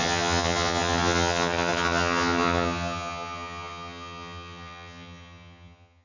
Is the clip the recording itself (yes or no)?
no